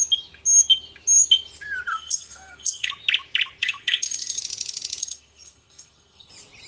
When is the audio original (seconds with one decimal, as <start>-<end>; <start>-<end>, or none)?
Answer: 0.0-1.9; 2.9-3.6; 4.4-5.0; 6.3-6.7